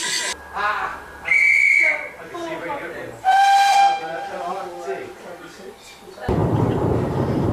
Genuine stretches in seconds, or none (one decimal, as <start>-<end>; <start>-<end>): 0.0-0.9; 4.6-6.4

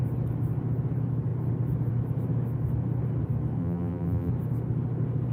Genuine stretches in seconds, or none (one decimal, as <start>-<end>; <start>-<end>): 0.0-3.6; 4.3-5.3

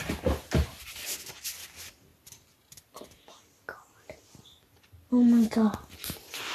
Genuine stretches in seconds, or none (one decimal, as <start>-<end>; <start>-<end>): 0.0-6.5

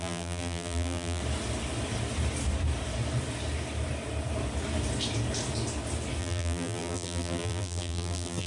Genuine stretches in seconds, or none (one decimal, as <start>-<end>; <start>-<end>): 1.2-6.2